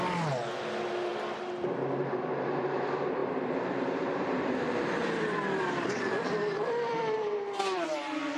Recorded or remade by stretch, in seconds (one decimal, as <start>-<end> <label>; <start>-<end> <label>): 0.0-1.1 recorded; 1.1-2.8 remade; 2.8-3.2 recorded; 3.2-8.4 remade